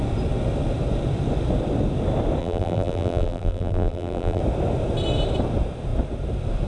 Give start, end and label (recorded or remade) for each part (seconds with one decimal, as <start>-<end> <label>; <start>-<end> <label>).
0.0-2.4 recorded; 2.4-4.4 remade; 4.4-6.7 recorded